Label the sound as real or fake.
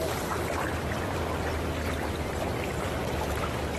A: real